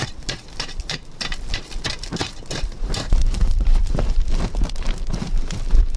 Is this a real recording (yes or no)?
no